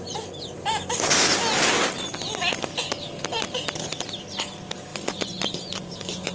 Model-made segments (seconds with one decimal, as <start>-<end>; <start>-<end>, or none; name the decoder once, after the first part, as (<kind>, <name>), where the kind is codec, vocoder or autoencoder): 4.9-6.3 (vocoder, Vocos)